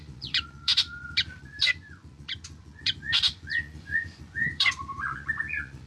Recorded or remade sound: remade